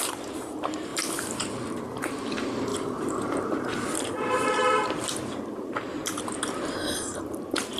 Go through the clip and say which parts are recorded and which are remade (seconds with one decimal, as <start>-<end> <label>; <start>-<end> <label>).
0.0-0.9 remade; 0.9-1.4 recorded; 1.4-7.8 remade